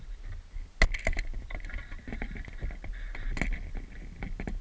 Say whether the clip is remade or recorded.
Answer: recorded